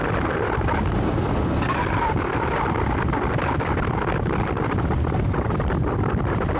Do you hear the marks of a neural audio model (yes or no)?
no